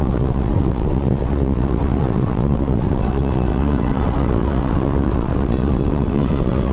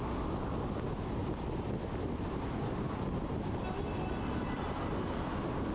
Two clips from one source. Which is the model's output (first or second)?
first